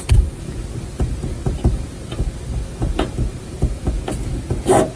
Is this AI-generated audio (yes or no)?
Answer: no